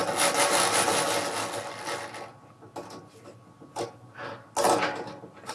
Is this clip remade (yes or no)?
no